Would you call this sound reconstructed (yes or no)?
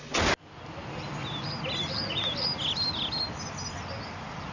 no